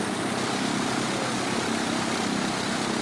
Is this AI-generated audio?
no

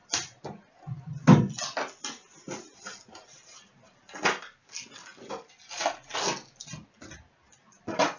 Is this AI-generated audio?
no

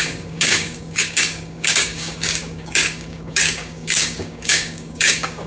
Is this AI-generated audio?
yes